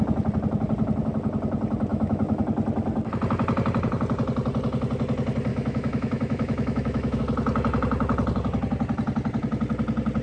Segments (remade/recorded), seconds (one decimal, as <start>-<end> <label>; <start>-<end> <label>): 0.0-1.9 recorded; 1.9-2.4 remade; 2.4-5.5 recorded; 5.5-7.2 remade; 7.2-10.2 recorded